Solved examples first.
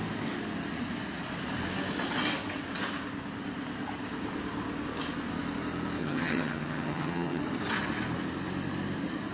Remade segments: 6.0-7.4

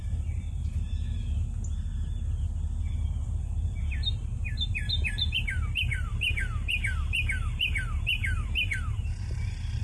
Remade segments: 0.0-0.7; 2.8-6.4; 7.0-9.8

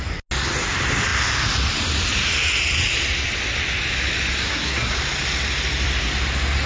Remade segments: 4.4-4.9

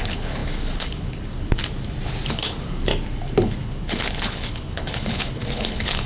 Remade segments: 0.0-1.6; 2.3-2.9; 3.4-6.1

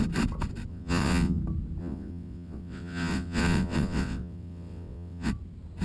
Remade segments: 0.7-1.4; 1.8-5.3

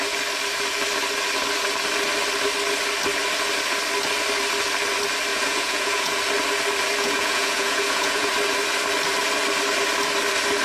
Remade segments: 5.3-6.2; 7.0-8.3